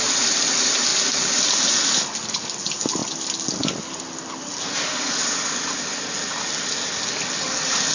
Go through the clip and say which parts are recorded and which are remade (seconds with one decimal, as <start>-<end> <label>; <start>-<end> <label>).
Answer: 0.0-7.9 recorded